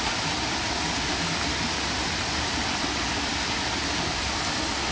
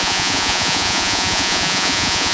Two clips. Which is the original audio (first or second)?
first